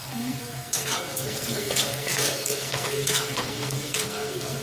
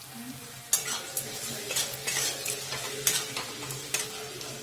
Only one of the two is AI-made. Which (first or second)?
first